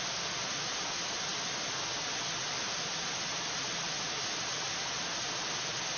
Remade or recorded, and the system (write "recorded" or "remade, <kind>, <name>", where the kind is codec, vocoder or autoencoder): recorded